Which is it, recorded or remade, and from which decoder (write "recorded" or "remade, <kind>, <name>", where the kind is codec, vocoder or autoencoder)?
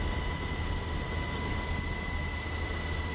recorded